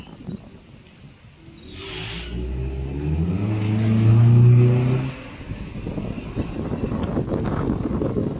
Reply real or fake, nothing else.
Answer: real